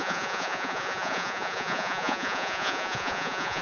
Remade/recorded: remade